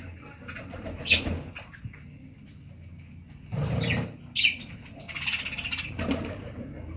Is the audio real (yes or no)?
yes